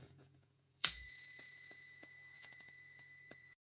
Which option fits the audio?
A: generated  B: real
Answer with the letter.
A